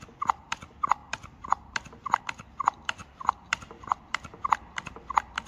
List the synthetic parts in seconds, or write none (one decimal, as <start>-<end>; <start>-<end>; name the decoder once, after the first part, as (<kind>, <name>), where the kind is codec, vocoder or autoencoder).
1.0-2.2 (vocoder, BigVGAN v2); 3.0-3.7